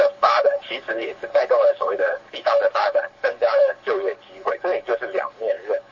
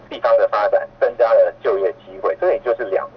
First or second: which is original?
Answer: second